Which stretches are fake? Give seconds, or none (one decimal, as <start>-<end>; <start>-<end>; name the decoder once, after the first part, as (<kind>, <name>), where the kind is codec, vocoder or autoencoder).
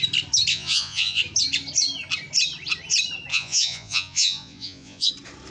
0.5-1.2 (vocoder, Vocos); 3.3-5.1